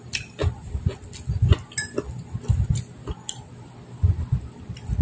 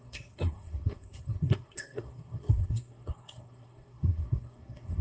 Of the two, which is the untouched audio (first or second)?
first